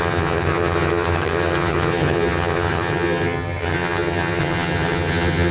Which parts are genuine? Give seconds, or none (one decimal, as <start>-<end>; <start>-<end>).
none